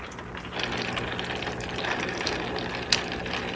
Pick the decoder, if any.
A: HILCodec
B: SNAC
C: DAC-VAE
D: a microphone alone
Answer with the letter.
D